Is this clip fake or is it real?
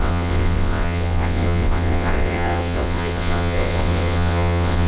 fake